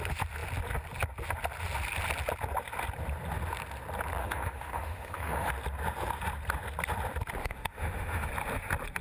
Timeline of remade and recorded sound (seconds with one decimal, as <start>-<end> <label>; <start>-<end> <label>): 0.0-4.2 recorded; 4.2-5.5 remade; 5.5-7.4 recorded; 7.4-8.3 remade; 8.3-9.0 recorded